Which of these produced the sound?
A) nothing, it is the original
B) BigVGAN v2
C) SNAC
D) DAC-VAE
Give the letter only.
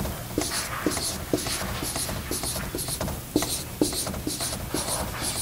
A